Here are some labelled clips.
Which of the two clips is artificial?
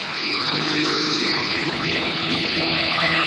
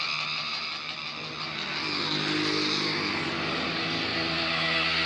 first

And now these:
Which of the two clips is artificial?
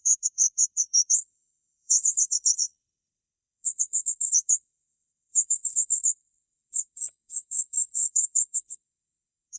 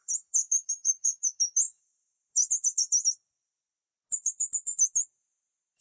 first